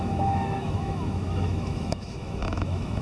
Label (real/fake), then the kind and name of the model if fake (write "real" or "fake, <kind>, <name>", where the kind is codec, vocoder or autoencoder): fake, autoencoder, DAC-VAE